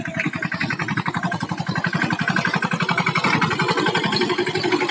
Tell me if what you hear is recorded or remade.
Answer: recorded